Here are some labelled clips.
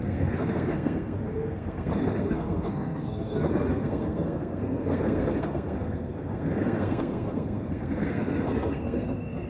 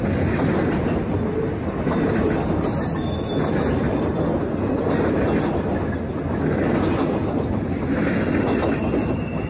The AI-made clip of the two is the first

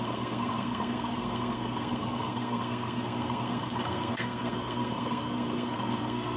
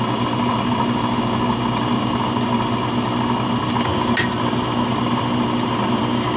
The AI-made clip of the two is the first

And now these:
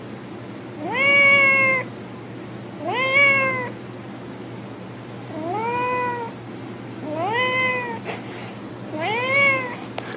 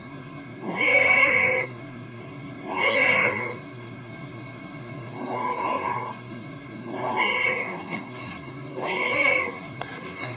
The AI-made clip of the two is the second